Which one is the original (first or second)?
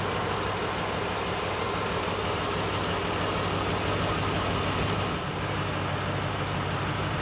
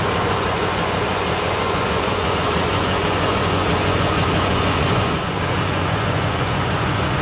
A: first